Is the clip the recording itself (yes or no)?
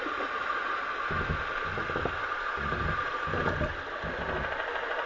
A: yes